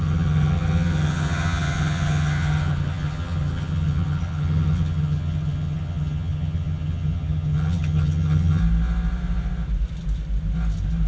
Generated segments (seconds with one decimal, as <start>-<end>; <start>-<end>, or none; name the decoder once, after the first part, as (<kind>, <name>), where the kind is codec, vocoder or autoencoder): 0.0-8.6 (vocoder, HiFi-GAN)